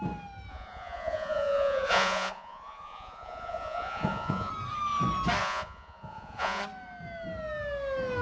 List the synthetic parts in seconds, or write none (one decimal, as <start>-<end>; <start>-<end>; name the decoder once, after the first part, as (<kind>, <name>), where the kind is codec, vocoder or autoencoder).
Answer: 0.5-4.5 (vocoder, Vocos); 5.4-6.6